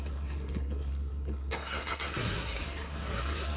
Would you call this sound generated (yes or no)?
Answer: yes